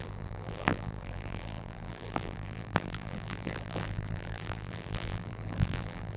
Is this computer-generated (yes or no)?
yes